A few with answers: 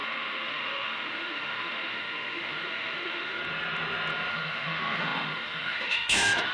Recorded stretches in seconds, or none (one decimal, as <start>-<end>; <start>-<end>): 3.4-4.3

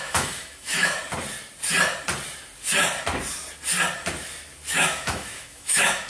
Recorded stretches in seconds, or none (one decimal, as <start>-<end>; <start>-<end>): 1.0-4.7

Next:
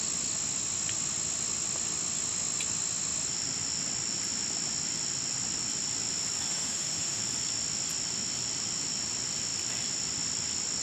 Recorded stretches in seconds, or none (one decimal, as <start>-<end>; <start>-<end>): 0.0-6.5; 7.2-10.8

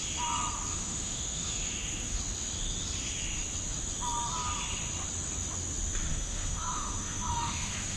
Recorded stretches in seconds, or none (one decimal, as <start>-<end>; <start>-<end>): 0.0-0.7; 2.2-6.1

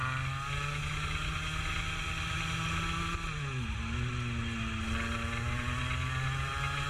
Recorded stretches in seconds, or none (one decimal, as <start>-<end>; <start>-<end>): 0.0-6.9

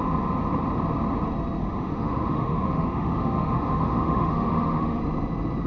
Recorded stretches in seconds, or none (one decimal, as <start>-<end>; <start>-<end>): 0.0-1.6; 5.0-5.7